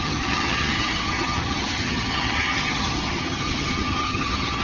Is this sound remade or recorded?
remade